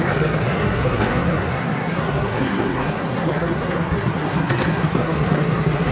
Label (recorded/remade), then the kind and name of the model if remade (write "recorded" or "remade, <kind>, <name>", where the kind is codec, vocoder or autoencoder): remade, codec, SNAC